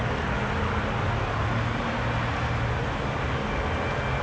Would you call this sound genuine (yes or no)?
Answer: yes